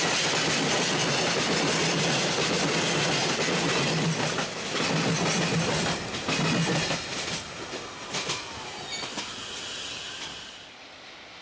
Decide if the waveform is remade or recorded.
recorded